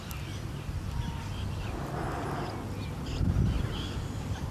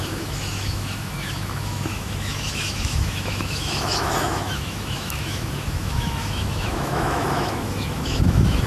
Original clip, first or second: first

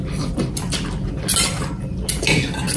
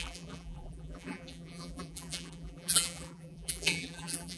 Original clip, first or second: first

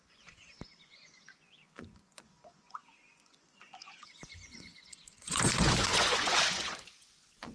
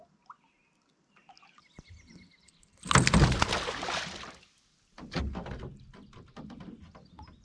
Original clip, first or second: second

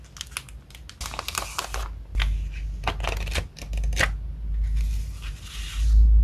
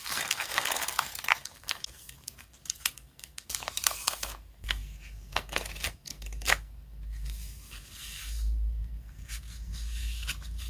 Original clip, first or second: first